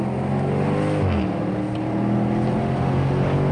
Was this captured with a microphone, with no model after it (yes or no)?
yes